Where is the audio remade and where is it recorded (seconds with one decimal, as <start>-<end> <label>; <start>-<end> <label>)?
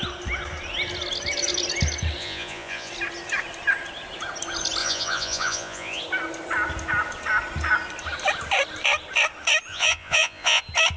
0.0-2.2 recorded; 2.2-2.9 remade; 2.9-4.8 recorded; 4.8-6.0 remade; 6.0-9.7 recorded; 9.7-10.6 remade; 10.6-11.0 recorded